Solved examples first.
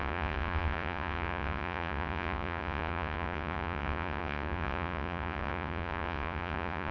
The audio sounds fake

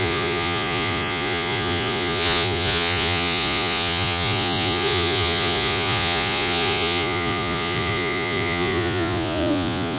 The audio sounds fake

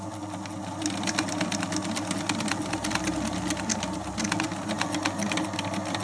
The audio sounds real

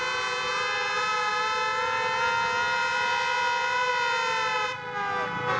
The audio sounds real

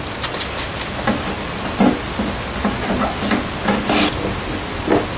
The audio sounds real